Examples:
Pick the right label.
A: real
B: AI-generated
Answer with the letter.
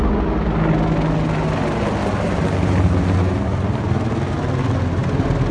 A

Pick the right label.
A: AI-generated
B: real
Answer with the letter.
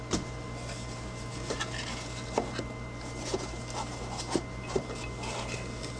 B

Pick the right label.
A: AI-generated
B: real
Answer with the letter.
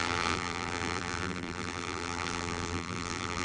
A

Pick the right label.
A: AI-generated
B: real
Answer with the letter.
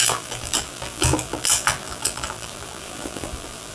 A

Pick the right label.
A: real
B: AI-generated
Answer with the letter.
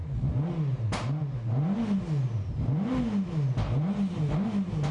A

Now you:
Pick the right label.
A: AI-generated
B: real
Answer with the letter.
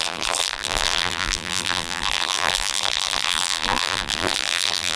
A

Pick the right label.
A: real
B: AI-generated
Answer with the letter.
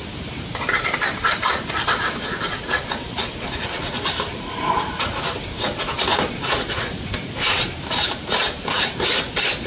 B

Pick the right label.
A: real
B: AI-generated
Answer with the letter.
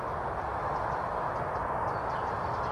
A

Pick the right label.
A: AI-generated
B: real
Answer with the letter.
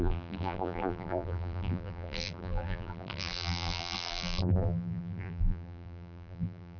A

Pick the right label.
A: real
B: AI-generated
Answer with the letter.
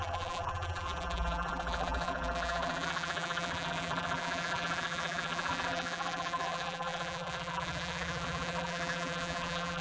B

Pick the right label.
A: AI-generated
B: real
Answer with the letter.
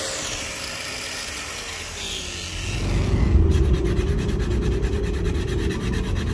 B